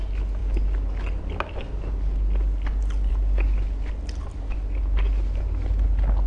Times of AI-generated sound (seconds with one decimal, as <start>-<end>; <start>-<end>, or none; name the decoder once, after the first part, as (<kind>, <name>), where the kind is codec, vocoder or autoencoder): none